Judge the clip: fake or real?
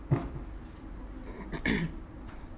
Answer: real